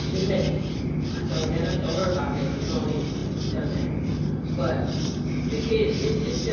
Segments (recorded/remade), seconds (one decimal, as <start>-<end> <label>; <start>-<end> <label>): 0.0-2.0 recorded; 2.0-2.6 remade; 2.6-6.5 recorded